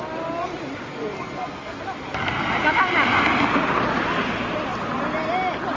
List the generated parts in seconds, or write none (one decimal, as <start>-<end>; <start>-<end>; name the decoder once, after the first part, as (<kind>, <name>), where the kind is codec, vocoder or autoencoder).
0.9-1.8 (codec, SNAC)